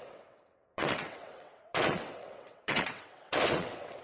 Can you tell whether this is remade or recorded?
remade